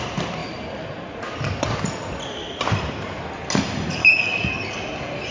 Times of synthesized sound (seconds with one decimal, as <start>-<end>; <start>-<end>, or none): 4.0-4.5